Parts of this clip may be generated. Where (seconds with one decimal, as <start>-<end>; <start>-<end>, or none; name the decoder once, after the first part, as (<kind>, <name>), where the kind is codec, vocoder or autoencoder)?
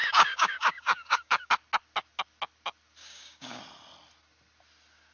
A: 0.0-1.5 (codec, DAC); 3.0-3.6